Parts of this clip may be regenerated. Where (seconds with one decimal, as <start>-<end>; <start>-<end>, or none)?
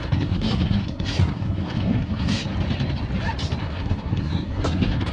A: 0.0-2.5; 3.6-5.1